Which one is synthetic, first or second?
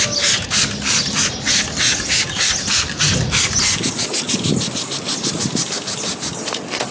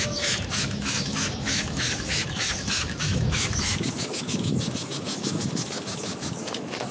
second